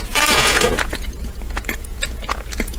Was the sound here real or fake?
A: fake